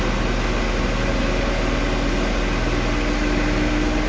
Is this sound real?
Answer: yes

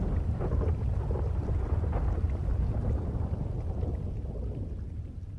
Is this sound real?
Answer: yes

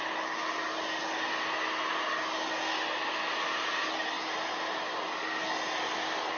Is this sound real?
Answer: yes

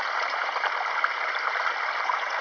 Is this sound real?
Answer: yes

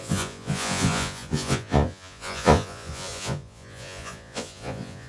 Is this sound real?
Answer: no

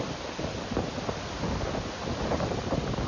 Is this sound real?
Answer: yes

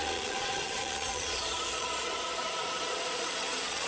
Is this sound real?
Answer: no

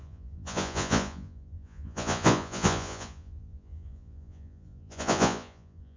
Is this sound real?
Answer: no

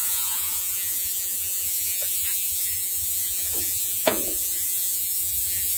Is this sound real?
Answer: no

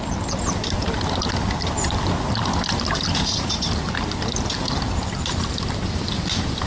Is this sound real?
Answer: yes